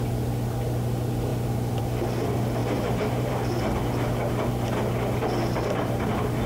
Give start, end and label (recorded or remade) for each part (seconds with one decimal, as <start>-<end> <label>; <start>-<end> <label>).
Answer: 0.0-2.6 recorded; 2.6-3.3 remade; 3.3-6.5 recorded